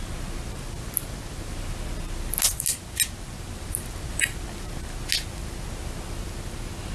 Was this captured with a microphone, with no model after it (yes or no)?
yes